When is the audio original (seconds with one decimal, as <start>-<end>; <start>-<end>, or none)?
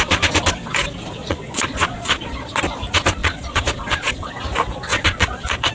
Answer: 0.0-1.2; 2.6-3.2; 4.3-4.9